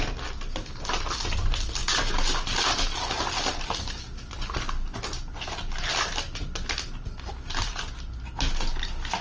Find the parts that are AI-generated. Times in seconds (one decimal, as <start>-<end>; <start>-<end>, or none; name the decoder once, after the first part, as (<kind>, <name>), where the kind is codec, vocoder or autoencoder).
none